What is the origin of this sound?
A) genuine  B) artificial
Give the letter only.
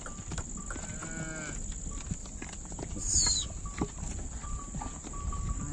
A